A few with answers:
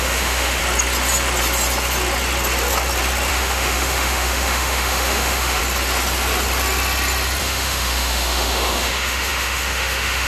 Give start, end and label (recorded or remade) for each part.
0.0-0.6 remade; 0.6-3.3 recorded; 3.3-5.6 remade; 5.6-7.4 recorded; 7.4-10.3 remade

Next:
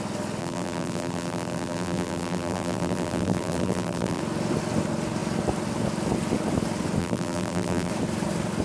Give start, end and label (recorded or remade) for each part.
0.0-0.4 recorded; 0.4-4.2 remade; 4.2-7.0 recorded; 7.0-7.9 remade; 7.9-8.6 recorded

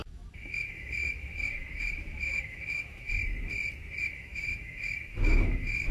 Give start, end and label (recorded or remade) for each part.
0.0-3.2 remade; 3.2-4.0 recorded; 4.0-5.9 remade

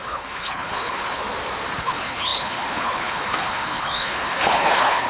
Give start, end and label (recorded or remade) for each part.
0.0-1.2 remade; 1.2-1.8 recorded; 1.8-5.1 remade

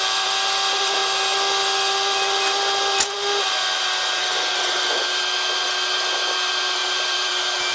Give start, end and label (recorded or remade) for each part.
0.0-6.8 recorded; 6.8-7.3 remade; 7.3-7.7 recorded

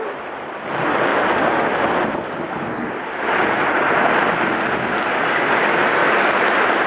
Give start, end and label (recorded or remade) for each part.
0.0-6.9 recorded

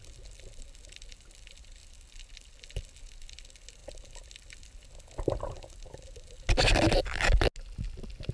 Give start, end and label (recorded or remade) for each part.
0.0-8.3 recorded

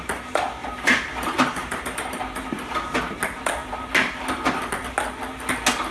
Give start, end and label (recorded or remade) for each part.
0.0-0.6 recorded; 0.6-2.2 remade; 2.2-5.9 recorded